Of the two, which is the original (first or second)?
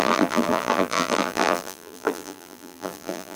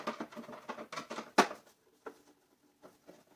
second